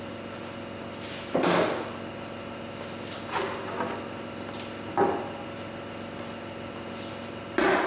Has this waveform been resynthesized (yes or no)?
no